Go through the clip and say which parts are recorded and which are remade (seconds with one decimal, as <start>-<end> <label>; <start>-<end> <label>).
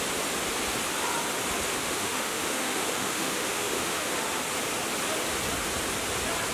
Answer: 0.0-1.8 recorded; 1.8-4.1 remade; 4.1-6.5 recorded